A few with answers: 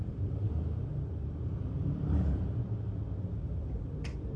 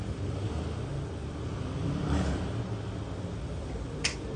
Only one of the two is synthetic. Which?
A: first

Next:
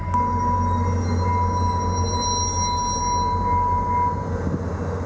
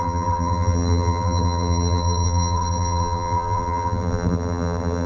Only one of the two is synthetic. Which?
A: second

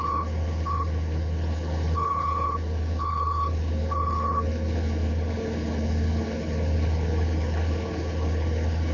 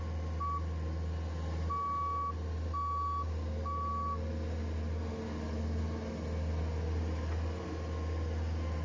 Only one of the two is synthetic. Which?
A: first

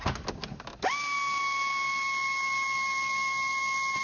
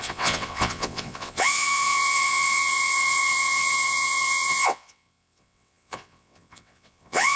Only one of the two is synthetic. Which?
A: second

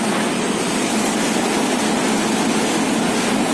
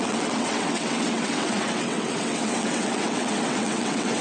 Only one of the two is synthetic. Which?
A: second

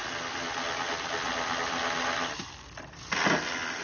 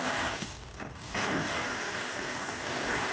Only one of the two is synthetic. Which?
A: second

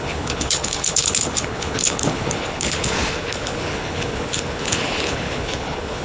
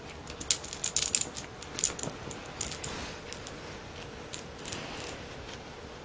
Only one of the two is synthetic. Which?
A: first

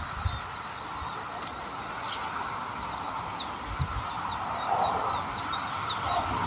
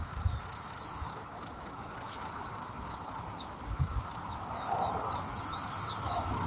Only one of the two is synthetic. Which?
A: second